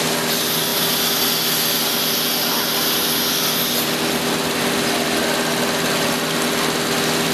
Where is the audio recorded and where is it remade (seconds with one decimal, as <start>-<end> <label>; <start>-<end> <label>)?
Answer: 0.0-7.3 recorded